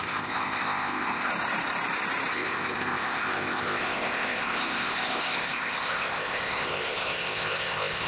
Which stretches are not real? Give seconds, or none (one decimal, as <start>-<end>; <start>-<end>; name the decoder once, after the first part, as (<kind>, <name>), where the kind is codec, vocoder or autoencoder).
0.0-1.3 (codec, ZipCodec); 2.3-8.1